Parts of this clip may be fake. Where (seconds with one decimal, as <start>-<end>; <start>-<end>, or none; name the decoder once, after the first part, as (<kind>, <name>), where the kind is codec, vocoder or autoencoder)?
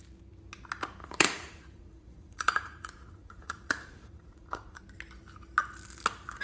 1.0-4.8 (vocoder, Vocos)